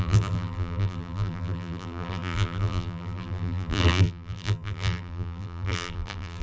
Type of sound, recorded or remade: remade